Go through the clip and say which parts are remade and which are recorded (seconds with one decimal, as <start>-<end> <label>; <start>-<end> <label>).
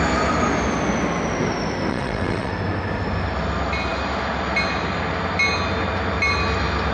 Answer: 0.0-1.9 recorded; 1.9-2.5 remade; 2.5-6.9 recorded